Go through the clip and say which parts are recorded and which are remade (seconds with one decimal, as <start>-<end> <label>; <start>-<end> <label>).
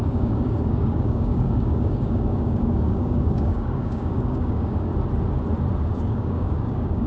0.0-4.9 remade; 4.9-5.8 recorded; 5.8-7.1 remade